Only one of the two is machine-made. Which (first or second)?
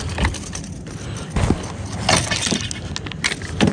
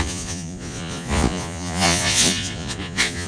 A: second